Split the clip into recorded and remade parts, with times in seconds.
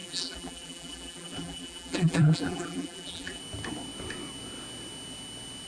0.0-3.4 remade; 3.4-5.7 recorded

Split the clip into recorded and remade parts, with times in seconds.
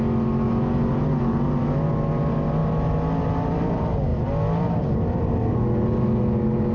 0.0-6.7 recorded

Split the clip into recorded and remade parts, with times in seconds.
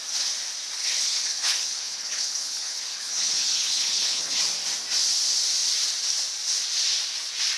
0.0-0.8 recorded; 0.8-4.4 remade; 4.4-7.6 recorded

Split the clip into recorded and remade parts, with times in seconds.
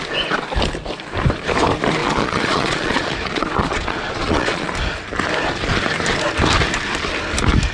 0.0-2.0 recorded; 2.0-4.7 remade; 4.7-7.7 recorded